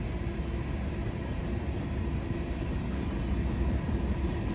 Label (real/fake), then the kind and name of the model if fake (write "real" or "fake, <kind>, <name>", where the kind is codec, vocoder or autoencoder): real